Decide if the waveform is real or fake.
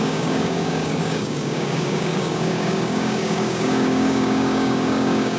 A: fake